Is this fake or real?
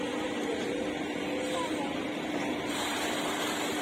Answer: fake